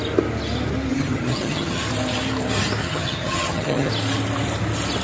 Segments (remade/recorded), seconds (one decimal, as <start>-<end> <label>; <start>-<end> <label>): 0.0-0.9 recorded; 0.9-1.8 remade; 1.8-2.8 recorded; 2.8-3.9 remade; 3.9-5.0 recorded